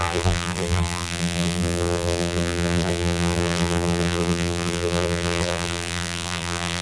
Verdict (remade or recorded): remade